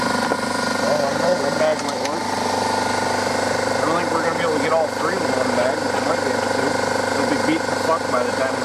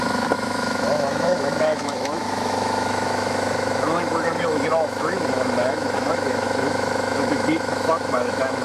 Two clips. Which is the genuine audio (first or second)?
first